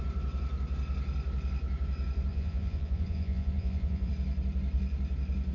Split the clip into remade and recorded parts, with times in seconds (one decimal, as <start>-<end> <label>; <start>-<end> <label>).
0.0-2.3 recorded; 2.3-4.1 remade; 4.1-5.5 recorded